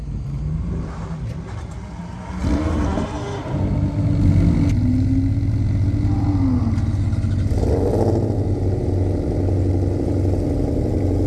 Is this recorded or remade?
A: recorded